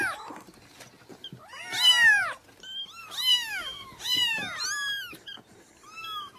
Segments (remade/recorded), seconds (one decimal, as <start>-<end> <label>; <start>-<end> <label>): 0.0-3.3 recorded; 3.3-4.0 remade; 4.0-6.4 recorded